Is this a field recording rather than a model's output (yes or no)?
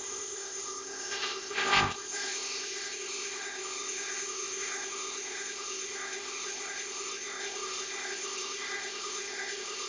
no